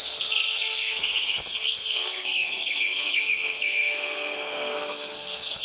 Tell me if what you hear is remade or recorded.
remade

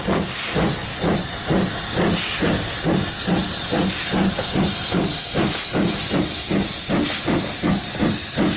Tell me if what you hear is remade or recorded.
recorded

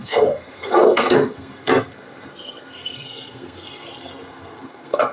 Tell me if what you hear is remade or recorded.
remade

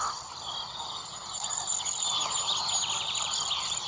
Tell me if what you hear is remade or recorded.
recorded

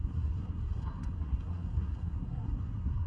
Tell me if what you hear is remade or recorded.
remade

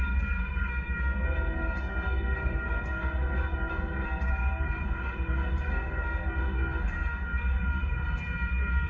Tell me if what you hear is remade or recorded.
remade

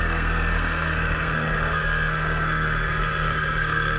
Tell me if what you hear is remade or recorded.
remade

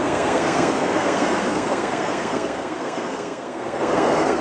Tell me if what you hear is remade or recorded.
remade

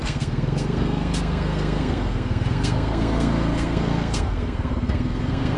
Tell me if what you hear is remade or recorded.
remade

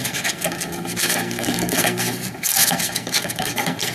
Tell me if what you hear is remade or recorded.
remade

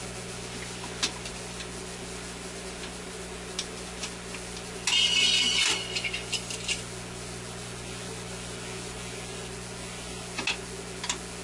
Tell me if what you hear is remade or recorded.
recorded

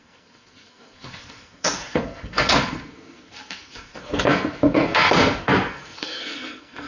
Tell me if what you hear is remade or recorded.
remade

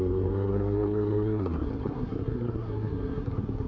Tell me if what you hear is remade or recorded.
remade